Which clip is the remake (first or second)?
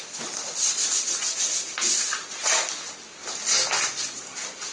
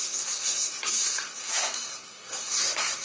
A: second